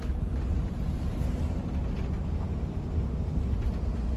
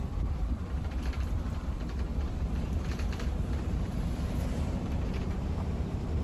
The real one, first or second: first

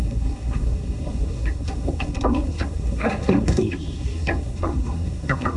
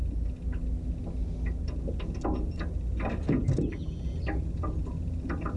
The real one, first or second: second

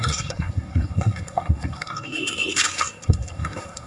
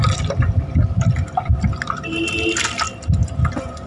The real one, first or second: second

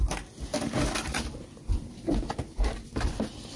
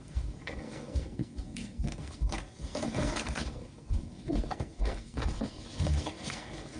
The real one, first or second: first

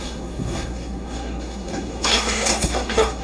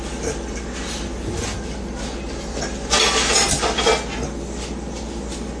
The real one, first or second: second